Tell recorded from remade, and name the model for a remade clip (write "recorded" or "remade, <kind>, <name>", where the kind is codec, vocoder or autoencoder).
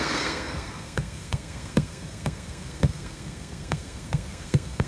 remade, codec, SNAC